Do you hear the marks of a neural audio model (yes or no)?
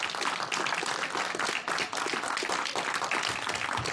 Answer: no